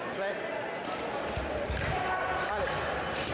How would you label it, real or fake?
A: real